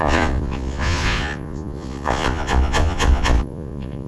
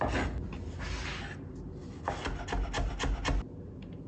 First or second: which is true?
second